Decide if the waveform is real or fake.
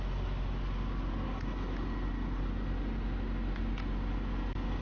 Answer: real